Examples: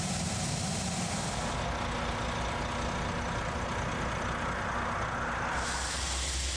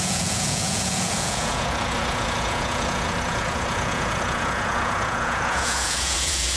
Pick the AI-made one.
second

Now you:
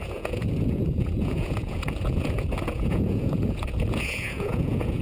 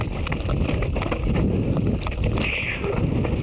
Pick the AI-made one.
first